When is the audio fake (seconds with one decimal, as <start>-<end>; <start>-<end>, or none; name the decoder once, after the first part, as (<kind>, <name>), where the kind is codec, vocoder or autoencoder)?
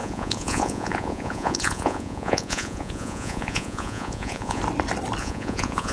0.0-4.6 (vocoder, Vocos); 5.2-5.9